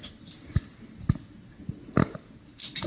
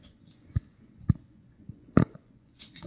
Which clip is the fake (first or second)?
second